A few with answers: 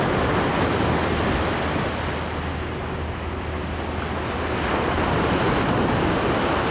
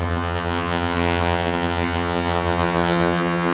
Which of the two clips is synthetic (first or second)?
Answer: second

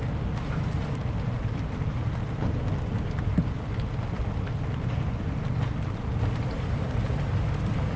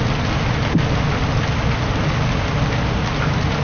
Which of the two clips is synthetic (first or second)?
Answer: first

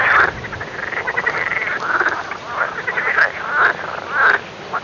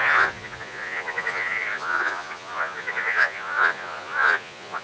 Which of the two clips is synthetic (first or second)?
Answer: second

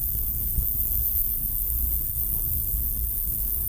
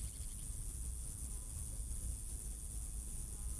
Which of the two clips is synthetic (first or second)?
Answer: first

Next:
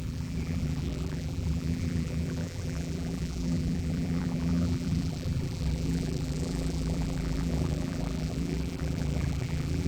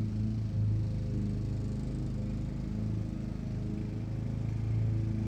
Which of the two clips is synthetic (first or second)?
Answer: first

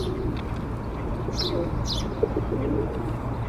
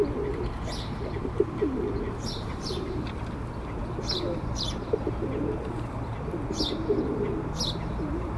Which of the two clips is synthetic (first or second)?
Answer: second